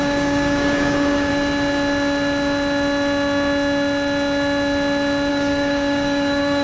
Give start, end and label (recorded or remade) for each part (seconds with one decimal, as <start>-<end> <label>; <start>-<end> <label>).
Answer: 0.0-1.3 remade; 1.3-5.3 recorded; 5.3-6.6 remade